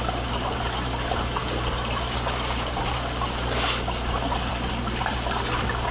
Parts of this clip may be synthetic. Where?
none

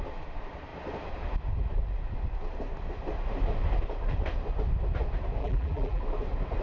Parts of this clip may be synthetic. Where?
5.4-6.0 (vocoder, BigVGAN v2)

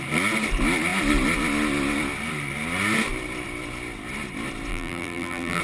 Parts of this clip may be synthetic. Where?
4.7-5.6 (vocoder, BigVGAN v2)

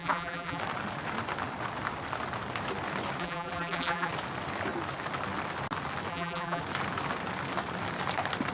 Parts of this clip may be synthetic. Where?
0.0-0.6 (vocoder, BigVGAN v2); 3.2-4.1; 6.1-6.6

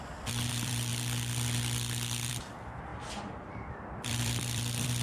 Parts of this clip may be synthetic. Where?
0.0-0.9 (vocoder, BigVGAN v2); 2.3-2.9; 3.5-5.0

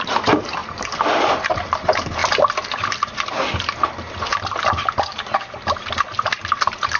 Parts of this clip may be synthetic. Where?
0.6-1.3 (vocoder, BigVGAN v2); 4.3-7.0